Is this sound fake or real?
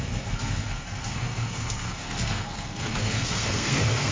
fake